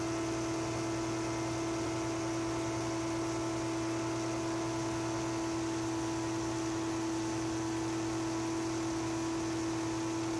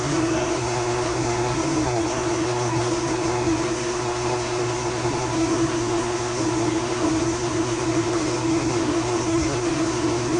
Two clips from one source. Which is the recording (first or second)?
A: first